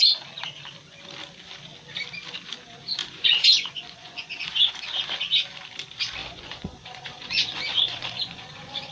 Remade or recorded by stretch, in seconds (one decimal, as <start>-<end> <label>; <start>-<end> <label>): 0.0-3.0 recorded; 3.0-4.8 remade; 4.8-6.2 recorded; 6.2-8.9 remade